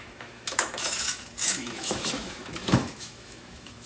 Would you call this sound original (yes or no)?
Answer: no